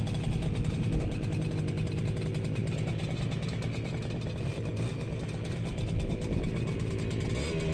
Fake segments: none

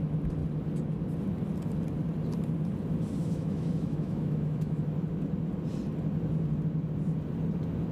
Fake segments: 3.2-4.8

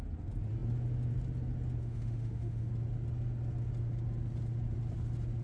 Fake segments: 1.8-2.7

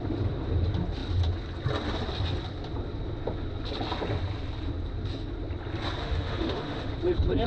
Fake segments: 6.0-6.9

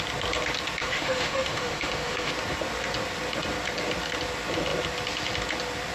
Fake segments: 0.8-2.3

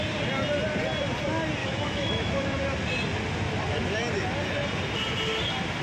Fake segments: 1.6-2.6

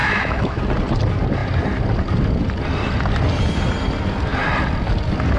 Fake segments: 0.0-0.6